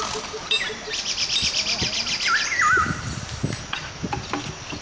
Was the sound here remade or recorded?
recorded